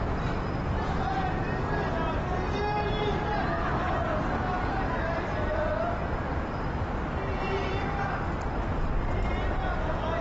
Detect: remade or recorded recorded